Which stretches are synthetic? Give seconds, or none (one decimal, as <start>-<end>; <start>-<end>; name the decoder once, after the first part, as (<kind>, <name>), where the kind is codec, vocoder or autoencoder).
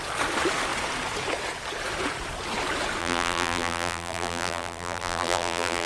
3.0-5.9 (vocoder, BigVGAN v2)